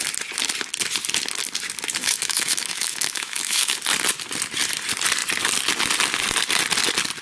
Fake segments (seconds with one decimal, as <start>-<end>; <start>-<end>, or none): 2.0-3.7